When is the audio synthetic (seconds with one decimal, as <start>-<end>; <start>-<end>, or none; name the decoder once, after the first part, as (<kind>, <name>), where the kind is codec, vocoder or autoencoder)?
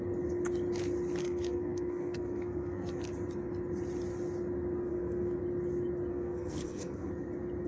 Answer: 1.2-3.0 (codec, SNAC); 4.9-5.4; 6.1-7.1